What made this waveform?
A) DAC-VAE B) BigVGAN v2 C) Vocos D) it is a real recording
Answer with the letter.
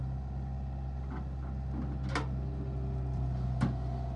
D